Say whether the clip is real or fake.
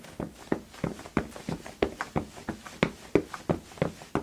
real